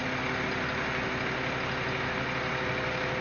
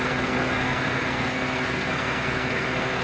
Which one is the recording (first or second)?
first